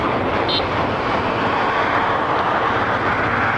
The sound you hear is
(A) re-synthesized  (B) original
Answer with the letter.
B